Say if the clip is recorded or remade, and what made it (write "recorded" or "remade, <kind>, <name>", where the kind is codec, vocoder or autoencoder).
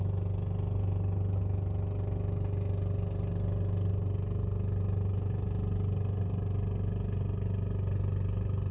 recorded